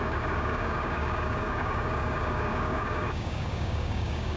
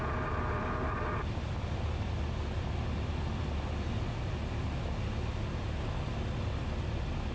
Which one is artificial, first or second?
first